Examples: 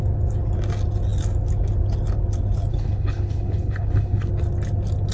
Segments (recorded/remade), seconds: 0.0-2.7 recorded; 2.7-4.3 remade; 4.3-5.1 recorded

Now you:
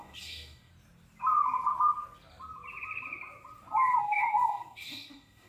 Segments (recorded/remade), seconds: 0.0-0.7 remade; 0.7-4.0 recorded; 4.0-5.5 remade

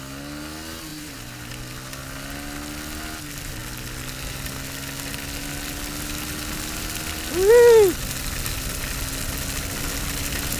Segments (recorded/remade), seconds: 0.0-0.9 recorded; 0.9-1.5 remade; 1.5-10.6 recorded

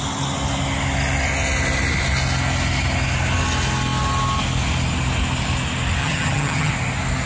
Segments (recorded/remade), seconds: 0.0-6.0 recorded; 6.0-6.7 remade; 6.7-7.3 recorded

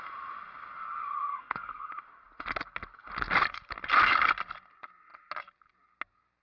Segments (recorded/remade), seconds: 0.0-1.3 recorded; 1.3-1.9 remade; 1.9-6.4 recorded

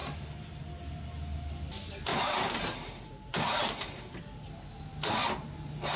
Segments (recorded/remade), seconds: 0.0-0.6 remade; 0.6-2.1 recorded; 2.1-4.2 remade; 4.2-6.0 recorded